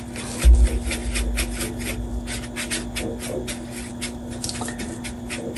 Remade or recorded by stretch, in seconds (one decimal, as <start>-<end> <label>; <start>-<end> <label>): 0.0-5.6 recorded